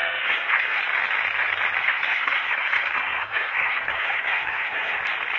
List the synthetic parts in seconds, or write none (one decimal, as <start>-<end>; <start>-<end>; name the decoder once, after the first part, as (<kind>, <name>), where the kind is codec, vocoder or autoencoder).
0.0-0.8 (codec, SNAC); 1.8-5.0